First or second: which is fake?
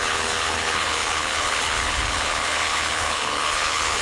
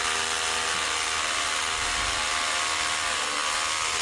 first